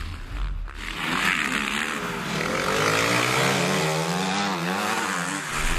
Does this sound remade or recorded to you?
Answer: recorded